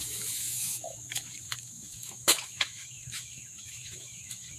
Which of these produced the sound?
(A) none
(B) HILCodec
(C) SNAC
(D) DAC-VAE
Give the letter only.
D